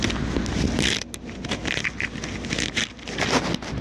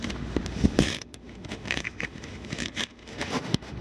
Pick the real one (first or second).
first